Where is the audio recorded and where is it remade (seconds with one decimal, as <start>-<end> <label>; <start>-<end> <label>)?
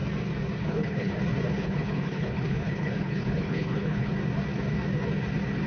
0.0-0.6 recorded; 0.6-1.1 remade; 1.1-1.6 recorded; 1.6-4.1 remade; 4.1-5.7 recorded